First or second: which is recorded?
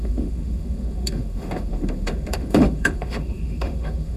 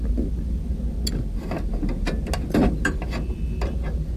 second